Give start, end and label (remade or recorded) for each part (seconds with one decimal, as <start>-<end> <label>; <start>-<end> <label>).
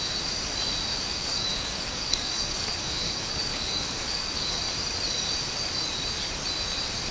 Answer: 0.0-0.9 recorded; 0.9-4.6 remade; 4.6-7.1 recorded